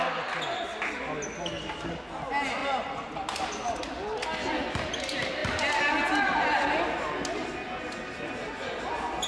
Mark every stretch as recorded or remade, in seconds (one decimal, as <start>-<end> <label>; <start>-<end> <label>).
0.0-9.3 recorded